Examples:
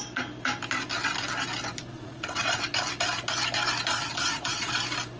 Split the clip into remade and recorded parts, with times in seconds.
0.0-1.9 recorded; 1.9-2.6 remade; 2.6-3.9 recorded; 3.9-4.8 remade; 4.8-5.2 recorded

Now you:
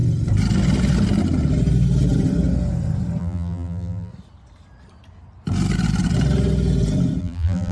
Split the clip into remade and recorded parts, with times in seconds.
0.0-3.2 recorded; 3.2-4.1 remade; 4.1-7.2 recorded; 7.2-7.7 remade

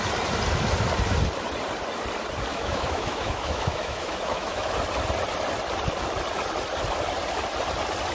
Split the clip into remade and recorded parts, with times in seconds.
0.0-2.5 recorded; 2.5-4.7 remade; 4.7-8.1 recorded

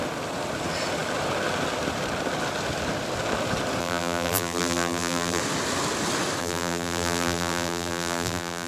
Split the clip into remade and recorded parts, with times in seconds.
0.0-3.8 recorded; 3.8-5.4 remade; 5.4-6.4 recorded; 6.4-8.7 remade

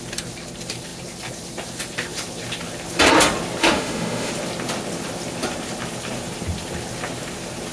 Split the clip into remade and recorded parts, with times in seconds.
0.0-3.6 recorded; 3.6-4.3 remade; 4.3-7.7 recorded

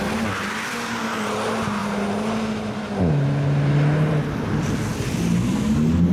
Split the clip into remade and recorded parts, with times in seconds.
0.0-6.1 recorded